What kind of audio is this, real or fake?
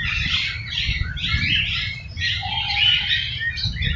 real